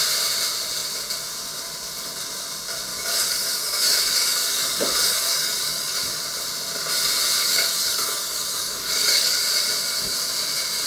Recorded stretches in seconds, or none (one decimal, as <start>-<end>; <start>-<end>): 0.0-2.9; 6.2-7.4; 9.4-10.9